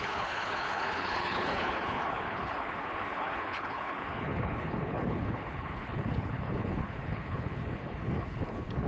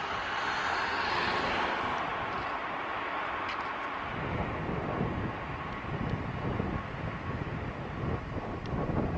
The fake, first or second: first